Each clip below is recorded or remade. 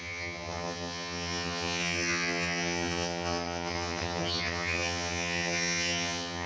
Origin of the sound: remade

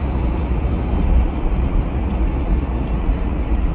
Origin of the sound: remade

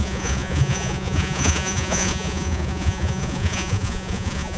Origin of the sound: remade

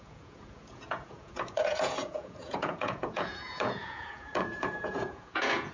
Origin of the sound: remade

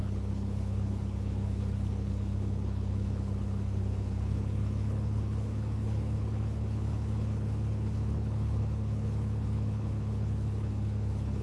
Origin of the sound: remade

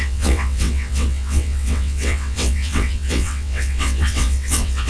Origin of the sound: remade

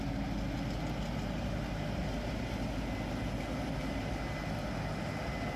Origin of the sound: recorded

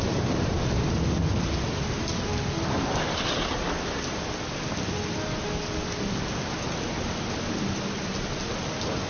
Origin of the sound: recorded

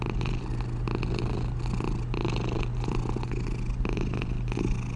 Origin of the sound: recorded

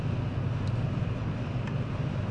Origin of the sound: recorded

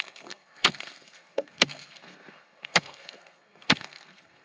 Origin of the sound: remade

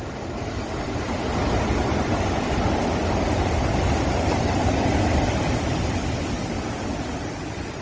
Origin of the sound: recorded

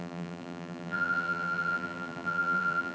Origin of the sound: remade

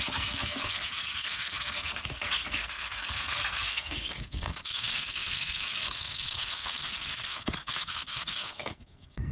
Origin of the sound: remade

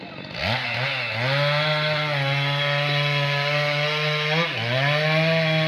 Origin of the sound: recorded